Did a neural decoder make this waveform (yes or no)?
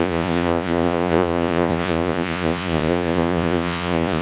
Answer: yes